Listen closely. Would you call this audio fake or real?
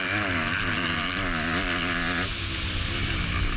real